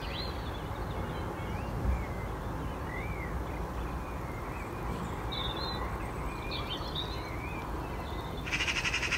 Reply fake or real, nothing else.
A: real